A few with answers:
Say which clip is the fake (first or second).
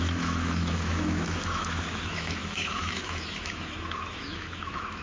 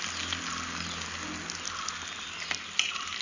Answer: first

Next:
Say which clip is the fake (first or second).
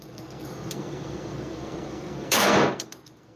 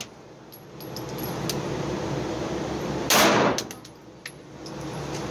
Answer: first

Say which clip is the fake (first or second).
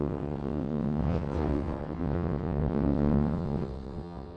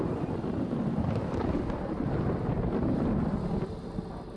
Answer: first